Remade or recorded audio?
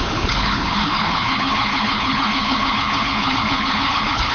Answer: remade